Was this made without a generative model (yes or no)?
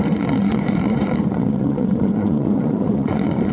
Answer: no